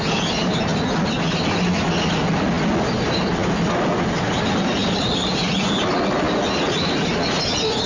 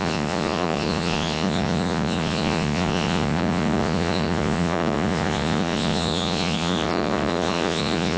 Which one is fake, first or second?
second